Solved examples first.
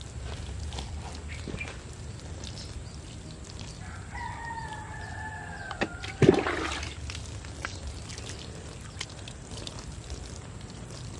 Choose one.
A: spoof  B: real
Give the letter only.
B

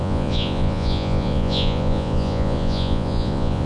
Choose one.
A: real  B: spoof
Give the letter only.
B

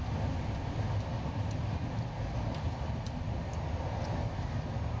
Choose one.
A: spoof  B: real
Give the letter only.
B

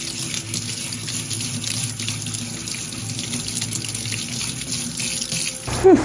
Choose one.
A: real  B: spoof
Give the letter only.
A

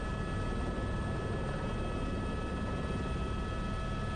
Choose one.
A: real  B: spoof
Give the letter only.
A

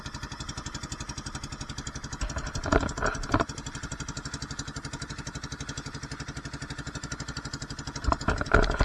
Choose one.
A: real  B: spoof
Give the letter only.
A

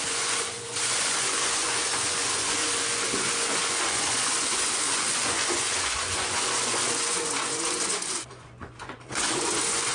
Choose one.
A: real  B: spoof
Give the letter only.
B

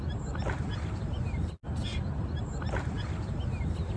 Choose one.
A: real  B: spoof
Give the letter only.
A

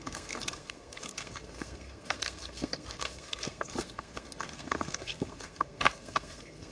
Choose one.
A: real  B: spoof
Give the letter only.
B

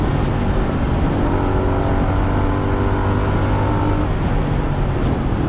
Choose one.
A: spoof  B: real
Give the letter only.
B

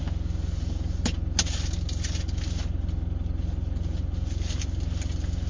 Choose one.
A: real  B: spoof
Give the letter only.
A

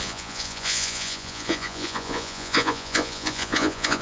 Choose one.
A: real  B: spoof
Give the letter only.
B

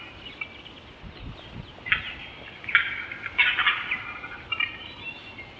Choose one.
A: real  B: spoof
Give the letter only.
A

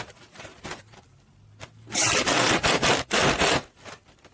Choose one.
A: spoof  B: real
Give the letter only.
B